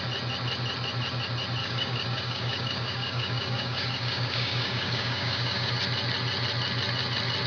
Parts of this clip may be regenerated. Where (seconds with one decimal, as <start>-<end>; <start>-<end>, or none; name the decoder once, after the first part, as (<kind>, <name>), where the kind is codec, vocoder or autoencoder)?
1.6-5.7 (codec, DAC)